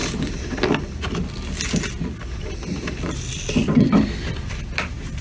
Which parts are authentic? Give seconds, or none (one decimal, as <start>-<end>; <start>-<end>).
0.0-3.1